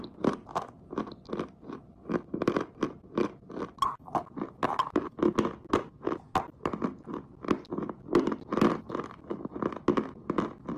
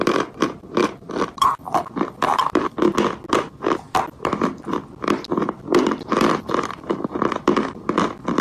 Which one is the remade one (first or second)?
second